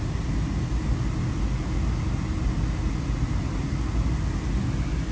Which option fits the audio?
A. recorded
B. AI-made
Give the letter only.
A